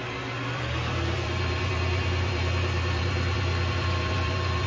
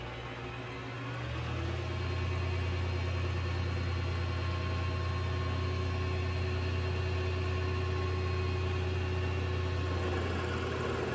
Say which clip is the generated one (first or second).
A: first